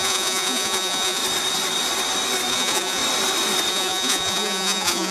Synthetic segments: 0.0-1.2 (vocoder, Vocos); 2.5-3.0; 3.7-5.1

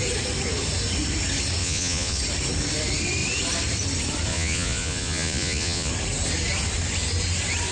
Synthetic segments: 1.6-2.2 (vocoder, Vocos); 4.3-5.9

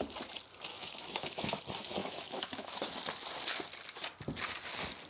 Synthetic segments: 0.7-1.6 (autoencoder, DAC-VAE); 2.0-2.8

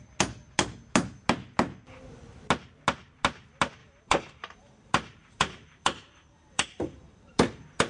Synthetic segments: 3.8-7.9 (vocoder, BigVGAN v2)

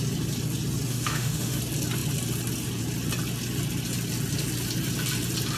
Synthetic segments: 0.9-1.6 (autoencoder, DAC-VAE)

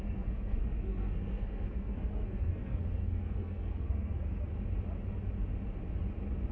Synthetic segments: 0.0-4.5 (codec, SNAC)

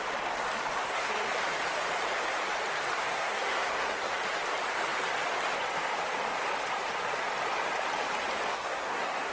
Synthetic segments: 0.8-1.3 (codec, SNAC); 3.0-4.2; 8.5-9.3

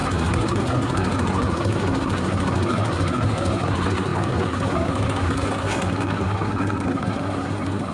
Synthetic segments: 0.0-7.9 (codec, SNAC)